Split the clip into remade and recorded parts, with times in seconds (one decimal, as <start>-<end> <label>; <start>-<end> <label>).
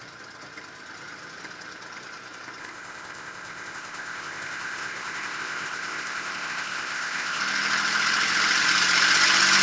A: 0.0-2.6 recorded; 2.6-7.4 remade; 7.4-9.6 recorded